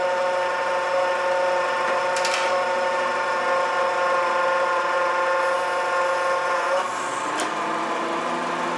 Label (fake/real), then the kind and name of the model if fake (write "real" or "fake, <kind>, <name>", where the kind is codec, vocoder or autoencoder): real